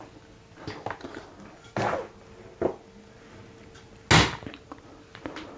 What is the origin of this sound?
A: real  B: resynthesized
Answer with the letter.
A